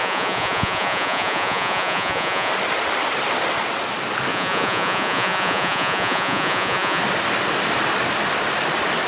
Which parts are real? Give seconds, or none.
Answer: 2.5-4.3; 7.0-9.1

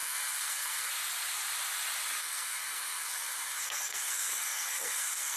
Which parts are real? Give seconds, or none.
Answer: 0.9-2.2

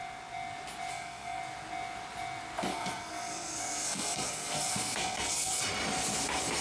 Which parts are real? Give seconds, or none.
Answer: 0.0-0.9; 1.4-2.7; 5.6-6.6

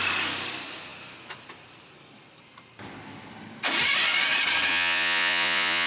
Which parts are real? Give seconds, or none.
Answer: 0.0-4.7

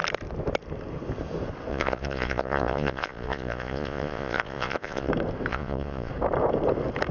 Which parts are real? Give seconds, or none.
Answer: 0.0-1.7; 5.1-5.5; 6.1-7.1